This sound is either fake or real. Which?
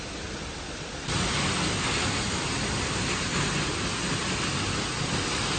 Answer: real